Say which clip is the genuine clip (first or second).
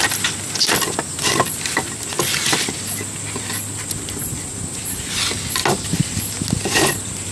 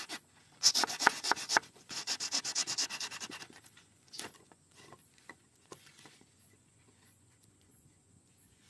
first